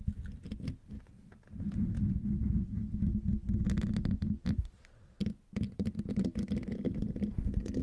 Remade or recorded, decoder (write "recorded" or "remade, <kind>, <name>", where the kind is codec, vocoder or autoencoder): recorded